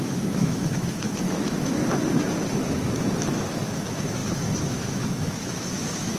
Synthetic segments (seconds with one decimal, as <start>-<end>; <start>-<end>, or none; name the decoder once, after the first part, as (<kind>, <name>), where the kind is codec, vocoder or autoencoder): 0.0-1.8 (autoencoder, DAC-VAE); 2.5-6.2